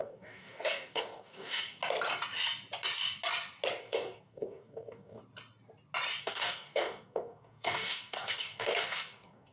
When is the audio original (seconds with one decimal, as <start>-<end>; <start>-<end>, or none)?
1.8-3.8; 5.2-6.2